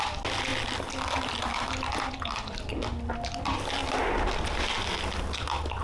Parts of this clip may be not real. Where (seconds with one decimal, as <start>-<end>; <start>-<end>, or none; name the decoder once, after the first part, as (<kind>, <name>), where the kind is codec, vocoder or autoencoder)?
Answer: none